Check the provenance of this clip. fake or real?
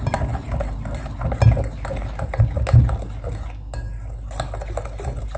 real